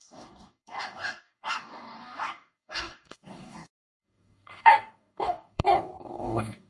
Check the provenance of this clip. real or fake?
fake